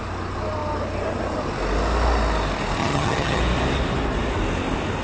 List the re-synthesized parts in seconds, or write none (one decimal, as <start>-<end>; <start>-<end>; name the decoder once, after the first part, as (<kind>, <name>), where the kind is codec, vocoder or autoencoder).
2.8-3.4 (vocoder, HiFi-GAN)